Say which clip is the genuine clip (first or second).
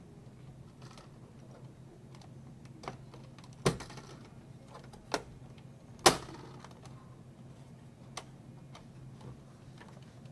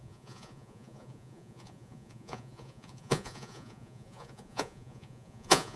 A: first